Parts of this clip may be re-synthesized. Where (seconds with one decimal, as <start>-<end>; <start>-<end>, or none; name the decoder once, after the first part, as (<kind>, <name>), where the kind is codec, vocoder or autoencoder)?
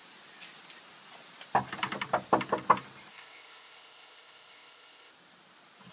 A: 3.1-5.1 (codec, ZipCodec)